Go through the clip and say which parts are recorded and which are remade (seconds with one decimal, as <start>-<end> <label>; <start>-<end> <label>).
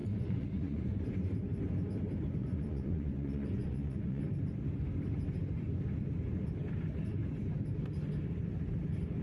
0.0-1.0 remade; 1.0-2.4 recorded; 2.4-4.2 remade; 4.2-9.2 recorded